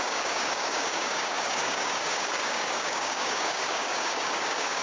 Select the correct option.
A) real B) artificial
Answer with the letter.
B